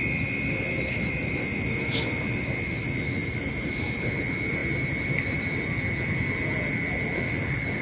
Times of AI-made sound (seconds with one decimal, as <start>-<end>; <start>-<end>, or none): 3.2-4.0